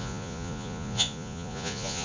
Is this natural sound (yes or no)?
no